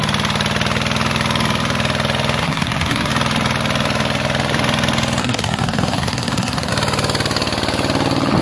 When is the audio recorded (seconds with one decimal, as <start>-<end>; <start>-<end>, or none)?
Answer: 0.0-2.4; 3.1-5.2; 6.7-8.4